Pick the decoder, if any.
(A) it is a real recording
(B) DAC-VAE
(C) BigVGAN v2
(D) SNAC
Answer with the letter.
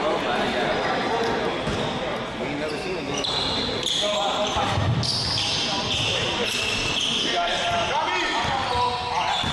A